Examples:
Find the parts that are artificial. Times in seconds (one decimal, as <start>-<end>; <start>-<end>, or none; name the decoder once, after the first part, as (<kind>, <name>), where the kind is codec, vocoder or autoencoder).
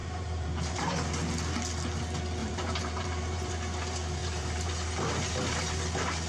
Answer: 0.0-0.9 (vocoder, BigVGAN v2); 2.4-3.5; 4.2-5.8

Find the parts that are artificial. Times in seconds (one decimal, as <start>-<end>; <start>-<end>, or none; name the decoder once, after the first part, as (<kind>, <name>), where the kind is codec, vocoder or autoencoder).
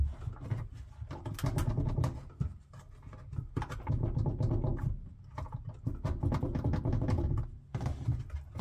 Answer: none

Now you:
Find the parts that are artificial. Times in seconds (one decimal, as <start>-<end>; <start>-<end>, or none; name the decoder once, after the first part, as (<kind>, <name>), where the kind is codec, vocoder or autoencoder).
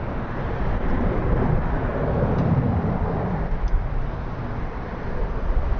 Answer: none